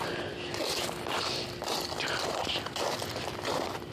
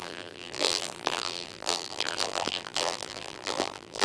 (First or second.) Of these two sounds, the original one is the first